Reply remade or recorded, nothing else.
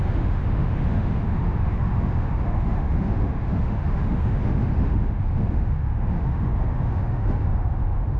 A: remade